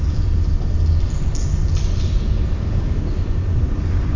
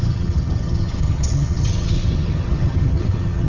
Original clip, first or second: first